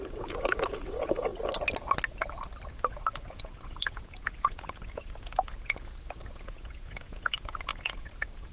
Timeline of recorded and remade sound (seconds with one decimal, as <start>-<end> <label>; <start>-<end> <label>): 0.0-1.3 remade; 1.3-2.7 recorded; 2.7-8.5 remade